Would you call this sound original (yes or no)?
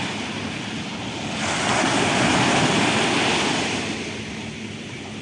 yes